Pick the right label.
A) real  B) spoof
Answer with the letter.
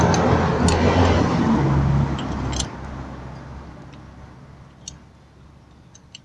A